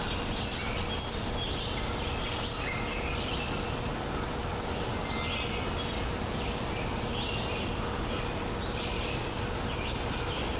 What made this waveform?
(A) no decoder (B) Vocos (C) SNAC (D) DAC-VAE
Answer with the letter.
A